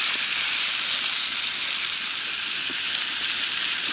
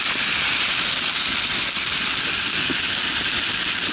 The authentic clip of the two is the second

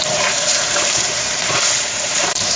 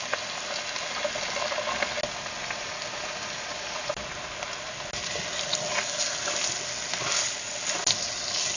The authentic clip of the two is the second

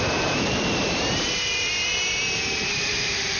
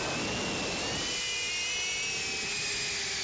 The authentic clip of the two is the second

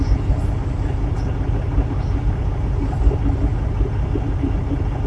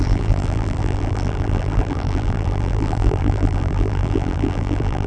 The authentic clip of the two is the first